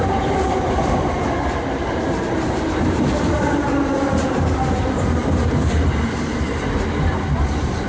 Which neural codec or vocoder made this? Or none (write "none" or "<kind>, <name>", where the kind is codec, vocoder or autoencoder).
vocoder, BigVGAN v2